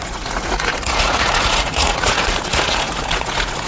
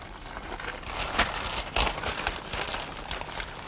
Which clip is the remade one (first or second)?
first